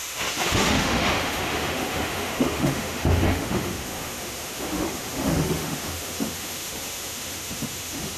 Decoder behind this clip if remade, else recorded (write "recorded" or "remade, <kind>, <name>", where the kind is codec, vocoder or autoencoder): remade, autoencoder, DAC-VAE